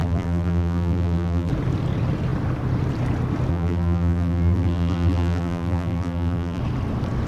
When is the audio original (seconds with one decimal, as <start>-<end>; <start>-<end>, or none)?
1.5-3.5; 6.6-7.3